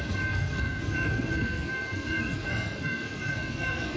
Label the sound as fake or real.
fake